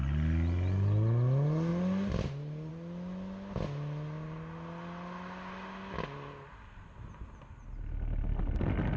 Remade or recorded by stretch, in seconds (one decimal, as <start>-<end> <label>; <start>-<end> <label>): 0.0-9.0 recorded